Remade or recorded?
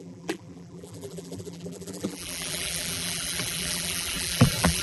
remade